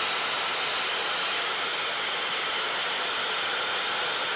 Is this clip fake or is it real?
real